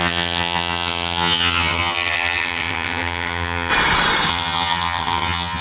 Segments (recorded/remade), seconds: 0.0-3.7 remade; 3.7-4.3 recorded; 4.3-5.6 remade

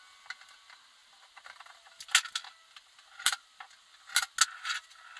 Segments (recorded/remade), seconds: 0.0-5.2 recorded

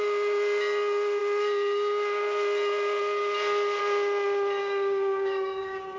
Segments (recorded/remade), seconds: 0.0-4.6 recorded; 4.6-6.0 remade

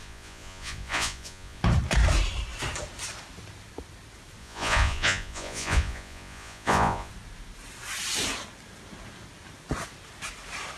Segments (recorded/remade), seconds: 0.0-1.6 remade; 1.6-4.4 recorded; 4.4-7.1 remade; 7.1-10.8 recorded